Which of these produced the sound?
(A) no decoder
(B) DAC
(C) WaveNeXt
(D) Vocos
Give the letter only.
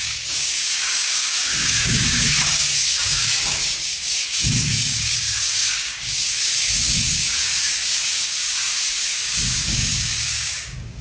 B